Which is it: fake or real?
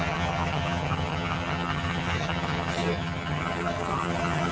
fake